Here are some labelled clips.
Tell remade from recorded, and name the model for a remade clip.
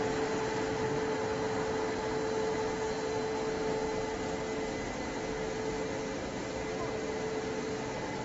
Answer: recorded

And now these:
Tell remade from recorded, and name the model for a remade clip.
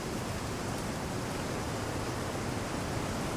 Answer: recorded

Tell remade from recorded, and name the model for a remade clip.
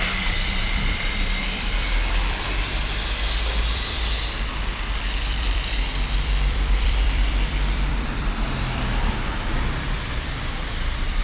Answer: remade, vocoder, BigVGAN v2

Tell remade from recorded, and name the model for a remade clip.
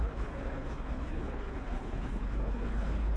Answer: remade, codec, HILCodec